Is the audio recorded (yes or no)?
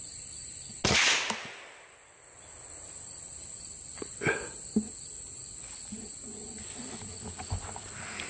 yes